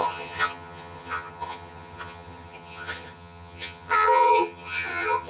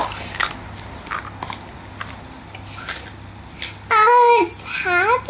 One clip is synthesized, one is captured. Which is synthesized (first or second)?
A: first